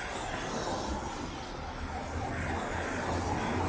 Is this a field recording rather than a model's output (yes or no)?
yes